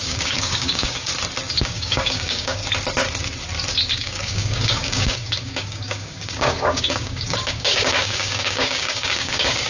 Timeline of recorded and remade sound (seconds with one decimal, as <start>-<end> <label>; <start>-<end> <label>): 0.0-1.1 remade; 1.1-1.6 recorded; 1.6-2.6 remade; 2.6-3.9 recorded; 3.9-9.7 remade